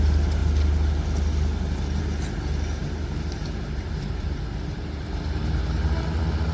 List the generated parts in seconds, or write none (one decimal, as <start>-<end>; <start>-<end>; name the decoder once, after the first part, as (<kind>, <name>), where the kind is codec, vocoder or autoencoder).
2.8-5.2 (vocoder, BigVGAN v2)